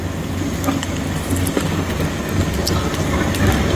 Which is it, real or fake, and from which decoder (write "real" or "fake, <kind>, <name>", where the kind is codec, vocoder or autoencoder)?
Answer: real